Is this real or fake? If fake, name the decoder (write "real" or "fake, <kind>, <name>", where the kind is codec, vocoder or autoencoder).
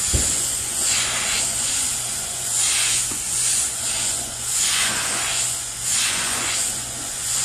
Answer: fake, vocoder, Vocos